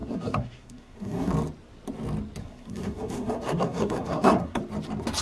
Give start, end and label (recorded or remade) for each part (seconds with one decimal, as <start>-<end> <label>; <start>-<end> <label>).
0.0-1.3 remade; 1.3-2.4 recorded; 2.4-4.6 remade; 4.6-5.2 recorded